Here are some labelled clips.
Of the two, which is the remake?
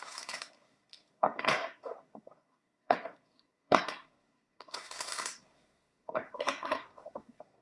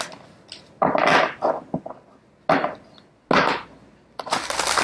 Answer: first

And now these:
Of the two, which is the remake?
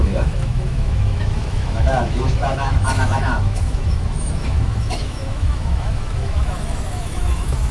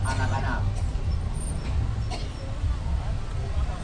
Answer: first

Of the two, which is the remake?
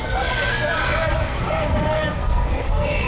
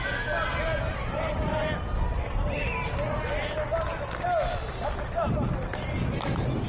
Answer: first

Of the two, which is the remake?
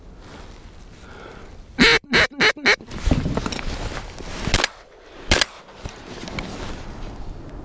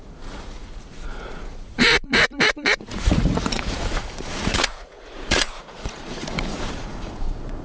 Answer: second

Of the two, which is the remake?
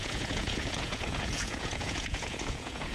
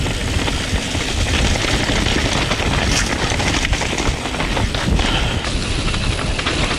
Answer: first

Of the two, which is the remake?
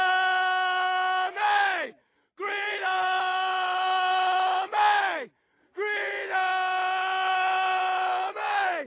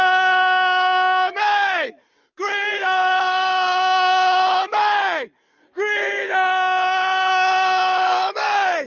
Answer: second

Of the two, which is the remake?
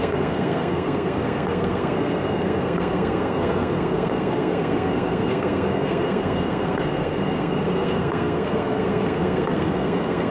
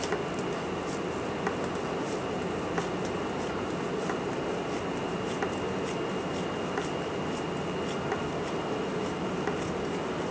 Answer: first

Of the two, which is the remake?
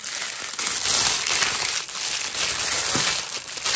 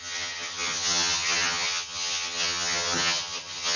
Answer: second